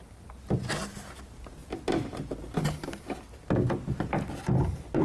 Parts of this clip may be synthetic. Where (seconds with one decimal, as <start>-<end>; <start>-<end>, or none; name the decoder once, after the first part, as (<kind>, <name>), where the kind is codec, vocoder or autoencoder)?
none